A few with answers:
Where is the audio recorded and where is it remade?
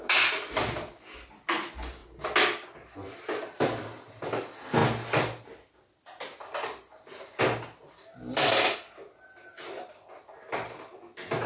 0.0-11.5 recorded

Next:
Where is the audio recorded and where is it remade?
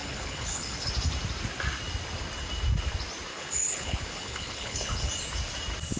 0.0-0.9 remade; 0.9-3.3 recorded; 3.3-5.1 remade; 5.1-6.0 recorded